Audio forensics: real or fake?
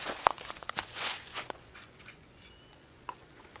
fake